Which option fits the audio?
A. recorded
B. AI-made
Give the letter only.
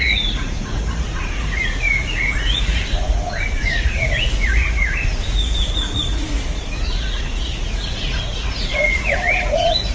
B